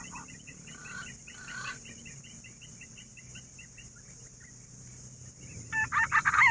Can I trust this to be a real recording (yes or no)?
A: yes